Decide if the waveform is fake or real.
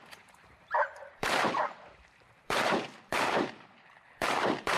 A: fake